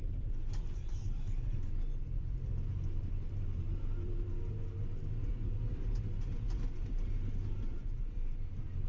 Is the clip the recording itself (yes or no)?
no